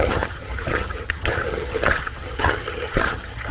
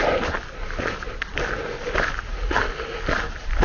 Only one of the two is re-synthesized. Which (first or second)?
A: first